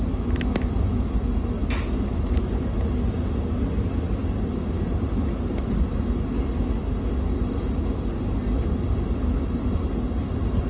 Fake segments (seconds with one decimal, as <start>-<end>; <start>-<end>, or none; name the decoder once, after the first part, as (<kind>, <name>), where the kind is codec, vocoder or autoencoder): none

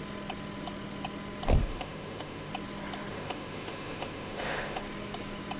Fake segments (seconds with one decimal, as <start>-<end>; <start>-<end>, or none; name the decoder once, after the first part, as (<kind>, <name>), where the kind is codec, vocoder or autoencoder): 1.6-2.5 (autoencoder, DAC-VAE); 3.1-4.8

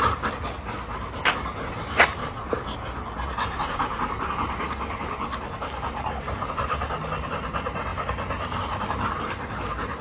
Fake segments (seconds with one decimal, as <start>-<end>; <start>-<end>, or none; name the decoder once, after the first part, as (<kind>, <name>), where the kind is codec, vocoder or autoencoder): none

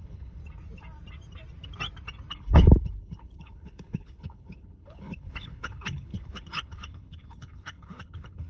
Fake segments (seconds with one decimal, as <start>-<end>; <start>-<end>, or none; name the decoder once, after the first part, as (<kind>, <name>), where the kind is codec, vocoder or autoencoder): 0.0-0.4 (codec, HILCodec); 2.3-8.5

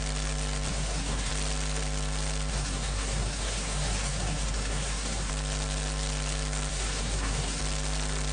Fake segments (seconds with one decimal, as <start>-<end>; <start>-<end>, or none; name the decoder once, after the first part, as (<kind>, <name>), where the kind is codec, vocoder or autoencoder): 0.7-1.3 (codec, SNAC); 2.5-5.3; 6.7-7.6

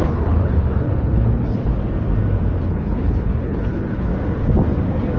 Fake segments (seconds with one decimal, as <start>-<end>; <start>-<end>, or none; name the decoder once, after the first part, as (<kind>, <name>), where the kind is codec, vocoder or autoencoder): 0.0-1.7 (codec, HILCodec); 2.7-4.1

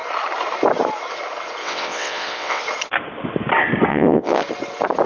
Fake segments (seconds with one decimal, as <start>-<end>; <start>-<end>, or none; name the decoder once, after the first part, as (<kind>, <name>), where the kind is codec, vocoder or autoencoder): 1.6-2.6 (vocoder, WaveNeXt); 3.9-4.4

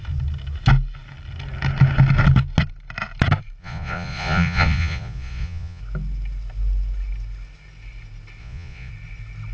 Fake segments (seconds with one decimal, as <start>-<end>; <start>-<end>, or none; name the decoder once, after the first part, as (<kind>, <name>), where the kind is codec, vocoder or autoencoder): 3.6-5.8 (vocoder, Vocos); 8.4-8.9